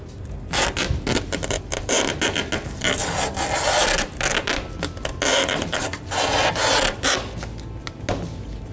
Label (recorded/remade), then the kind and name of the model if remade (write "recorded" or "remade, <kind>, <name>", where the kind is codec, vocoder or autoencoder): recorded